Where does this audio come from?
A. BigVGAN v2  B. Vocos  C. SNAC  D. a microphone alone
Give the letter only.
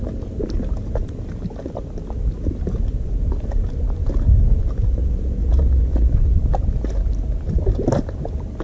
D